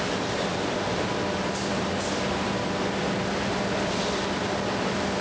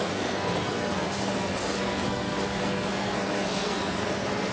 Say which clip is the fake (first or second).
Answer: second